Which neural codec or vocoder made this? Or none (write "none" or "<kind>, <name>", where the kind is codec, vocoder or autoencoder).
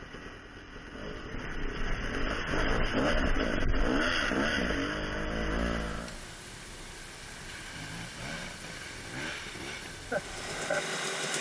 none